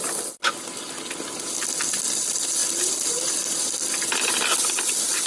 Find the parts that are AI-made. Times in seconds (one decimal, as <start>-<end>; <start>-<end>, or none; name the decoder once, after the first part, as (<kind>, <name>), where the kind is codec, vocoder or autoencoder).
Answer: 2.6-4.7 (vocoder, BigVGAN v2)